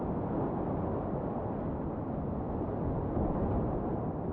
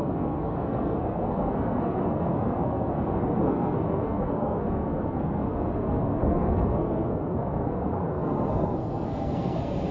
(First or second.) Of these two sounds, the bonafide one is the first